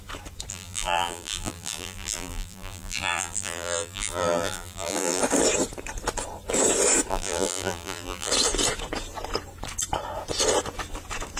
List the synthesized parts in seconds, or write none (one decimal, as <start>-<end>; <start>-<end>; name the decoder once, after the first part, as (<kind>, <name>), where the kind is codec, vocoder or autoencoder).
0.5-5.2 (vocoder, BigVGAN v2); 7.1-8.3